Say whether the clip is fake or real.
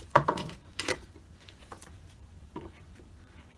fake